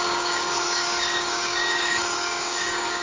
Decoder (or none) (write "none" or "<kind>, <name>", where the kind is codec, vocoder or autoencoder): codec, DAC